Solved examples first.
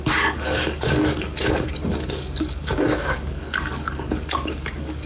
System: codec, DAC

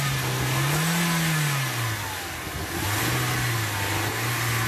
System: none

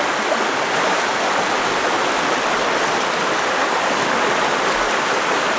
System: none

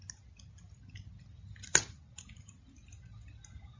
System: none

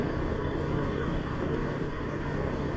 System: codec, DAC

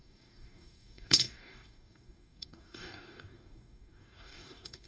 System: codec, DAC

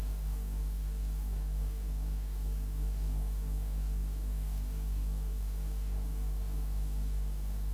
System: codec, DAC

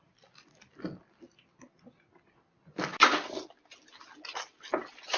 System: none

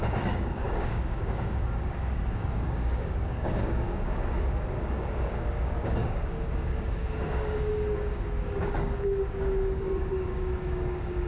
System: codec, DAC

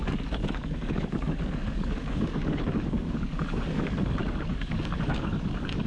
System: codec, DAC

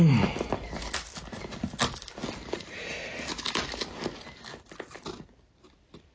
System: none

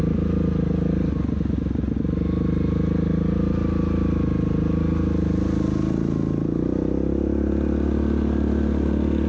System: none